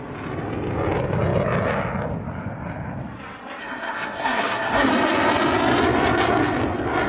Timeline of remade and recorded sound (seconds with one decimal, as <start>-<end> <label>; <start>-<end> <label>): 0.0-3.6 recorded; 3.6-4.9 remade; 4.9-7.1 recorded